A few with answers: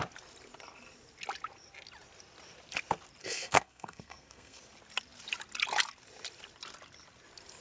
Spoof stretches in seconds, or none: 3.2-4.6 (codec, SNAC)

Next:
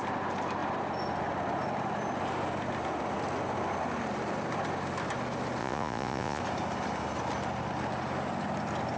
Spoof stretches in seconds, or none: 5.6-6.4 (vocoder, Vocos)

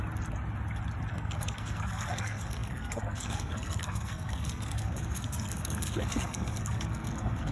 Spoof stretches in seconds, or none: 1.1-7.5 (codec, SNAC)